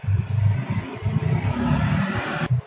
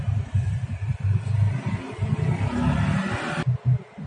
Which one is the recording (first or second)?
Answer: second